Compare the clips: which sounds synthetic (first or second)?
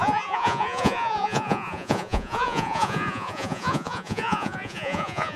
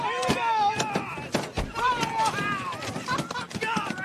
first